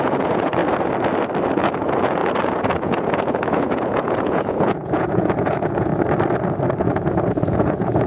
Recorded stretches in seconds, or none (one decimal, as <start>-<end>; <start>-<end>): 0.6-1.5; 5.9-6.8